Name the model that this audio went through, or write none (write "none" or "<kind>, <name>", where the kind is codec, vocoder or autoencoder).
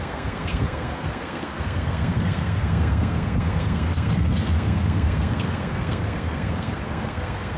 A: codec, SNAC